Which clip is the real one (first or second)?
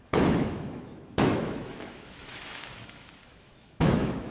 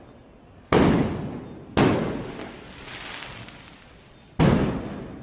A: second